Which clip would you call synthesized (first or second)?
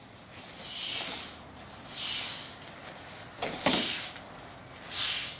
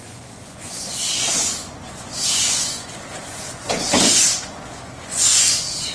second